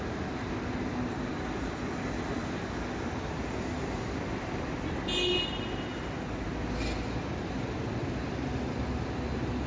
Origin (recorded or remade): recorded